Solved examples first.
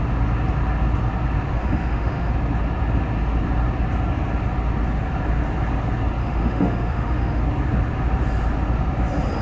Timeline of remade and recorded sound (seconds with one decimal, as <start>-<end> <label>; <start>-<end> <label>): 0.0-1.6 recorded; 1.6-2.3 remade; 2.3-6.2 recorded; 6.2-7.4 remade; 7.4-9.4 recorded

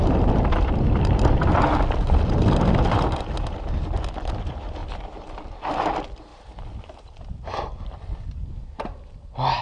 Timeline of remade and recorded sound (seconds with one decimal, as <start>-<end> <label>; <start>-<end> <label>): 0.0-9.6 recorded

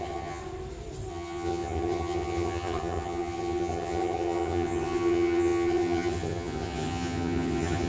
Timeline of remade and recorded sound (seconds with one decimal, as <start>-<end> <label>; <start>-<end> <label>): 0.0-0.4 remade; 0.4-1.1 recorded; 1.1-7.9 remade

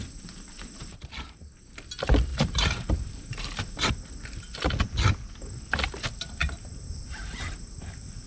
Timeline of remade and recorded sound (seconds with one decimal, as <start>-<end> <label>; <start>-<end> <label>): 0.0-0.8 recorded; 0.8-1.6 remade; 1.6-2.3 recorded; 2.3-3.9 remade; 3.9-6.4 recorded; 6.4-8.3 remade